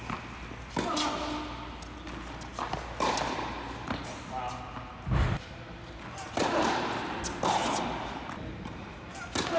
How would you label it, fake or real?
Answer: real